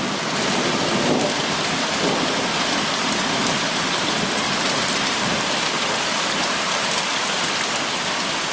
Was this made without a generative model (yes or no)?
no